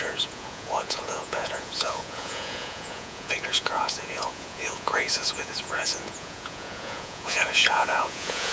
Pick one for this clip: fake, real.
fake